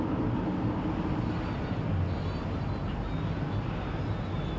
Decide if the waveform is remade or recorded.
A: recorded